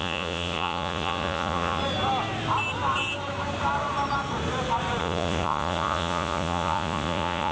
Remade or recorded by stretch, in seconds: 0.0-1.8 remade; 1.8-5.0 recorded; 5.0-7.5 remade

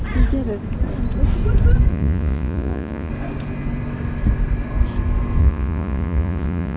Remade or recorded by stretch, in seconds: 0.0-1.9 recorded; 1.9-3.1 remade; 3.1-5.4 recorded; 5.4-6.8 remade

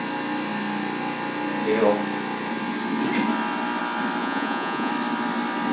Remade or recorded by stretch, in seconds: 0.0-4.2 recorded; 4.2-4.9 remade; 4.9-5.7 recorded

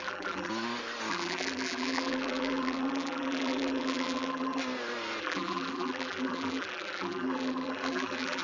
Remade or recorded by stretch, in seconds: 0.0-0.5 remade; 0.5-1.1 recorded; 1.1-4.6 remade; 4.6-5.2 recorded; 5.2-8.4 remade